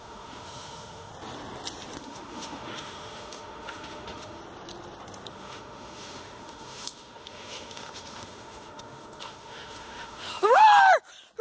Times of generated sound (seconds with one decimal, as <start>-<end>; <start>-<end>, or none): 0.0-1.1; 2.0-4.4; 5.3-10.6

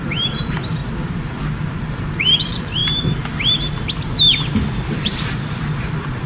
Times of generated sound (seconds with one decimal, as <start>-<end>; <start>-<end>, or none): 0.0-0.8; 1.9-2.8; 4.9-6.3

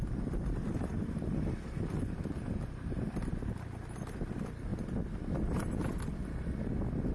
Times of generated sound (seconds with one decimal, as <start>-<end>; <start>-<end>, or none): none

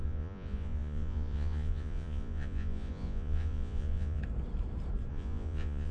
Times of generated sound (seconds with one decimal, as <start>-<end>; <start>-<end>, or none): 0.0-4.2; 5.1-5.9

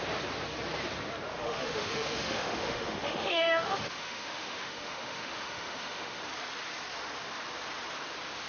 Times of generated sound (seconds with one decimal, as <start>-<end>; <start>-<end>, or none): 1.3-6.2

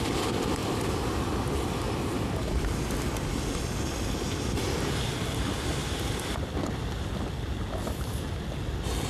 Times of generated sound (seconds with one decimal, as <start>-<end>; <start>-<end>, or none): 0.6-2.1; 5.8-7.1